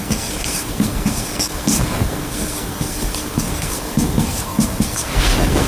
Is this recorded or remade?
remade